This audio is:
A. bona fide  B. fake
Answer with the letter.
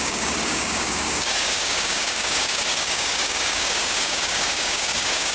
B